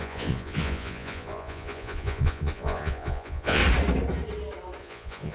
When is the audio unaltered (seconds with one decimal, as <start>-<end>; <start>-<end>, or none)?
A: 3.6-4.8